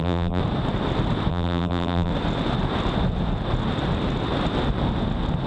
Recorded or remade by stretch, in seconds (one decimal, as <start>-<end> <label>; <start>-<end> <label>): 0.0-0.4 remade; 0.4-1.3 recorded; 1.3-2.1 remade; 2.1-5.5 recorded